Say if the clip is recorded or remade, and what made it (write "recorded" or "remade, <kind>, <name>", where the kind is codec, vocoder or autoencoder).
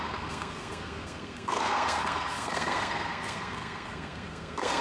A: remade, codec, SNAC